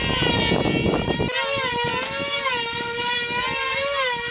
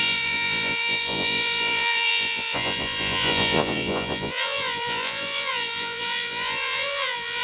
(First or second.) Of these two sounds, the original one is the first